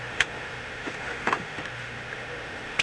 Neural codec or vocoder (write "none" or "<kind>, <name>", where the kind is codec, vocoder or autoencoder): autoencoder, DAC-VAE